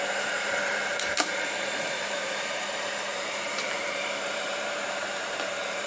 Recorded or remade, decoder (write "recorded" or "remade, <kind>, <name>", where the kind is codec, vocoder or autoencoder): remade, vocoder, BigVGAN v2